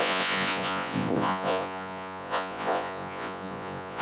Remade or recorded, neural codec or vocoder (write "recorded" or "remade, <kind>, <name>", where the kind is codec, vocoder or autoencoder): remade, vocoder, Vocos